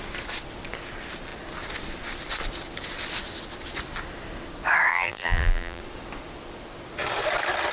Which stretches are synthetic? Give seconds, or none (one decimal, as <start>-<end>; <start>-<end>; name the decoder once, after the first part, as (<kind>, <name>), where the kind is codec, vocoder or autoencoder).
4.9-5.8 (vocoder, BigVGAN v2)